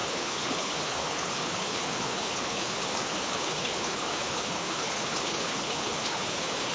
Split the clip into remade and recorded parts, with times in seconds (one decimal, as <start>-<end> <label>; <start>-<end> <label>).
0.0-6.7 remade